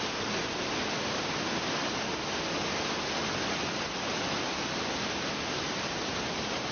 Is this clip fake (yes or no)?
no